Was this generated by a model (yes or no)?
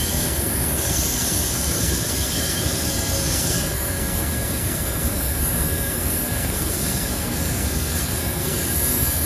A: yes